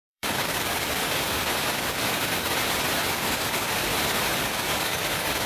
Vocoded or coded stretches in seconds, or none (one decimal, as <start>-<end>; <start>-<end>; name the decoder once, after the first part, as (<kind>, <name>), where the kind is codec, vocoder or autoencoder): 0.0-2.5 (codec, DAC); 3.1-3.9; 4.4-5.5